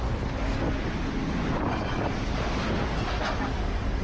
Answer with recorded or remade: recorded